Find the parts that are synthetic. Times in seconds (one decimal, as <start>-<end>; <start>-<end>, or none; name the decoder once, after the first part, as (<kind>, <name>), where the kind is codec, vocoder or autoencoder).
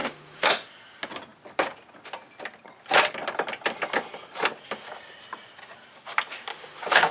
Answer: 0.0-0.5 (autoencoder, DAC-VAE); 6.5-7.1